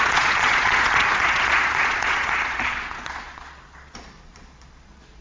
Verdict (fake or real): fake